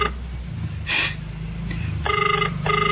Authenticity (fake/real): real